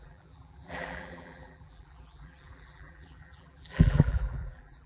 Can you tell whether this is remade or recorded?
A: remade